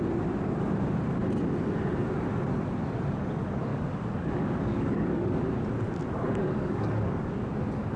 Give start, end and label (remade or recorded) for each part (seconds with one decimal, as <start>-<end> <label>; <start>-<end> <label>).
0.0-3.7 recorded; 3.7-5.4 remade; 5.4-6.4 recorded; 6.4-7.5 remade; 7.5-8.0 recorded